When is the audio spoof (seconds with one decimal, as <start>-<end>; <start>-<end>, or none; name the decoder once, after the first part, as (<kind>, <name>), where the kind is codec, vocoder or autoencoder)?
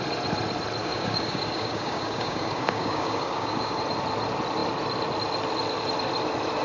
0.8-3.8 (codec, DAC)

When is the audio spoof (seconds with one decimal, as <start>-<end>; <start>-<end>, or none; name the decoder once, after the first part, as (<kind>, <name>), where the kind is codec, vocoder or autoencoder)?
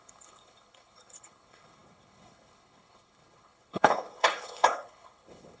0.0-5.6 (codec, HILCodec)